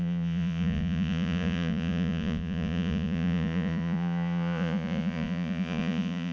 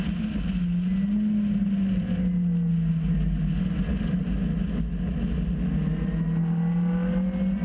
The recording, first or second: second